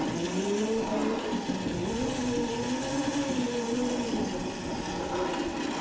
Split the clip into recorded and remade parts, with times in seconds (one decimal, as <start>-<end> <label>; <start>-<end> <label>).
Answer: 0.0-5.8 recorded